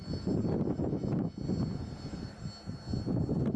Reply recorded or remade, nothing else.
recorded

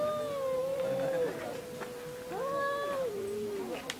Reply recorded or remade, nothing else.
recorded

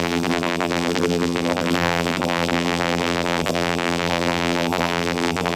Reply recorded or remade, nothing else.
remade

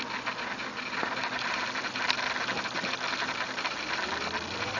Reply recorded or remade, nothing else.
recorded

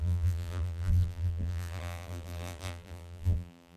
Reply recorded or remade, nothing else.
remade